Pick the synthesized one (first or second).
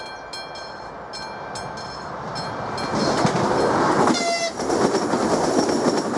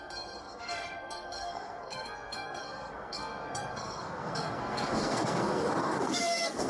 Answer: second